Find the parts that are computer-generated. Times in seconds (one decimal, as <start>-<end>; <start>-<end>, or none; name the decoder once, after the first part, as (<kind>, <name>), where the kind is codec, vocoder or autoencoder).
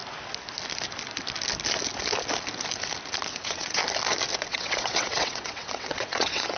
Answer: 3.3-3.8 (vocoder, WaveNeXt); 4.5-6.6